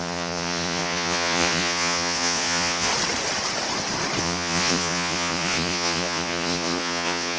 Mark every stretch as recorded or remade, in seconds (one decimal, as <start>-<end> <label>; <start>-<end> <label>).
0.0-2.9 remade; 2.9-4.2 recorded; 4.2-7.4 remade